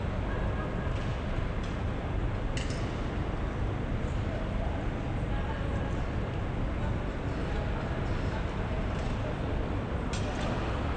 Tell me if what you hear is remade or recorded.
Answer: recorded